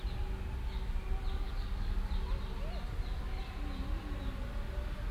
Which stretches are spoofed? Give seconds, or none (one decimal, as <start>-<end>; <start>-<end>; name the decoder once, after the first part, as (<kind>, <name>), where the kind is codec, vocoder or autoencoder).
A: 1.3-2.1 (codec, DAC)